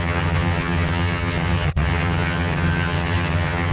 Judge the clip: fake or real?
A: fake